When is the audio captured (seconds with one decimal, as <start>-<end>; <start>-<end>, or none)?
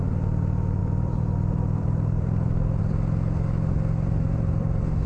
0.0-0.8; 2.8-5.1